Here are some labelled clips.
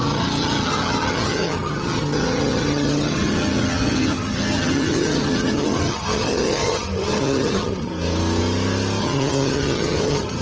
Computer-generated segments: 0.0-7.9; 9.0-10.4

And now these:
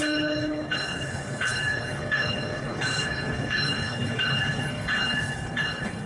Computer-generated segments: 0.0-6.1

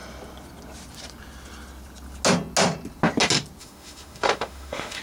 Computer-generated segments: 3.6-5.0

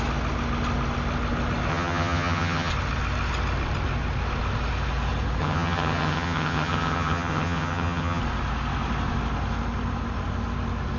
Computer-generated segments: 1.7-2.7; 5.4-8.2

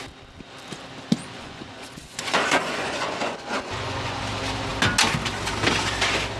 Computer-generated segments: 1.2-4.2

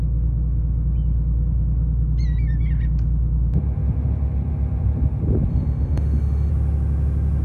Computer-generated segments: 5.5-6.5

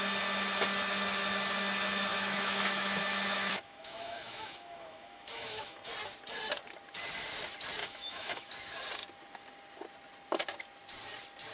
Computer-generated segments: 2.1-5.9; 7.8-8.5